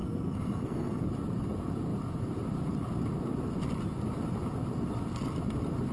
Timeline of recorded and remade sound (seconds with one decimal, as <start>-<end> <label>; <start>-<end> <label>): 0.0-1.0 remade; 1.0-5.9 recorded